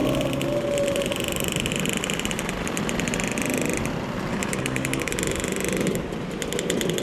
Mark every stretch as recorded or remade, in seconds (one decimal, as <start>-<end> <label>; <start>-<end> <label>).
0.0-4.3 recorded; 4.3-5.1 remade; 5.1-7.0 recorded